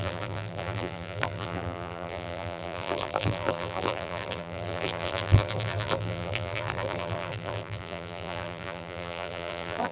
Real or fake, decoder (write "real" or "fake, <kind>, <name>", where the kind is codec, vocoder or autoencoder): fake, vocoder, BigVGAN v2